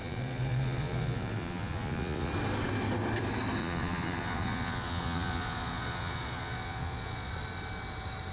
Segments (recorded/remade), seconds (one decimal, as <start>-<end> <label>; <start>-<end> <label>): 0.0-2.3 remade; 2.3-3.6 recorded; 3.6-7.3 remade; 7.3-8.3 recorded